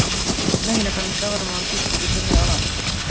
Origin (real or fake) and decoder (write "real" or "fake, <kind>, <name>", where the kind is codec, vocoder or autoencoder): real